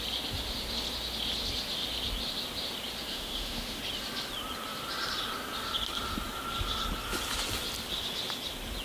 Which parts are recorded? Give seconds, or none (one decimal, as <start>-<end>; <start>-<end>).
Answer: 0.0-3.1; 3.8-8.8